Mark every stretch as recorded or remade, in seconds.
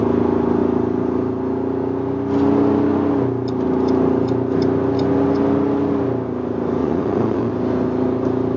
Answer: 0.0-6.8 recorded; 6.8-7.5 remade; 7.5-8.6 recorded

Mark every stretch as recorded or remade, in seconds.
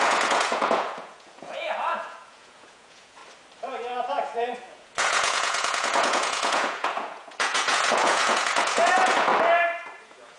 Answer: 0.0-3.2 remade; 3.2-3.7 recorded; 3.7-9.3 remade; 9.3-10.0 recorded; 10.0-10.4 remade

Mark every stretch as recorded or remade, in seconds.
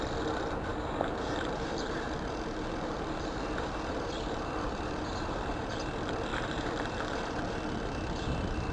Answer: 0.0-0.7 recorded; 0.7-5.7 remade; 5.7-6.3 recorded; 6.3-7.6 remade; 7.6-8.7 recorded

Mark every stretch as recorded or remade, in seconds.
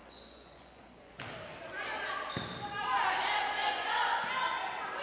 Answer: 0.0-1.2 remade; 1.2-3.6 recorded; 3.6-4.2 remade; 4.2-5.0 recorded